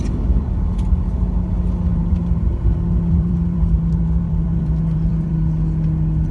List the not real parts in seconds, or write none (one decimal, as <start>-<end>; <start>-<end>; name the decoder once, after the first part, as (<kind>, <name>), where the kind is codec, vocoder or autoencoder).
1.9-5.3 (vocoder, BigVGAN v2)